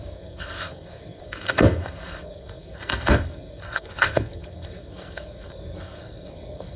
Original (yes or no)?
no